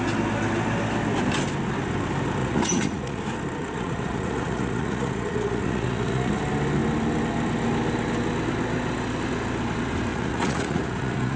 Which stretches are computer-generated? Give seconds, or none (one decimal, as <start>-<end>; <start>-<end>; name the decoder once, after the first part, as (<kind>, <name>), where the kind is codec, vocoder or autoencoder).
2.4-3.2 (vocoder, Vocos); 3.6-6.3; 10.1-11.4